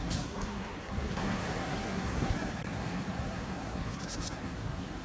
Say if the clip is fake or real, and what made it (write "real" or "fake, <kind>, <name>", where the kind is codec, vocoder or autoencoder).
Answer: fake, codec, SNAC